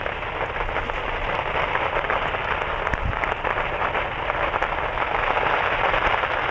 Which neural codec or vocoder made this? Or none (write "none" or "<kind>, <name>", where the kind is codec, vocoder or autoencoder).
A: none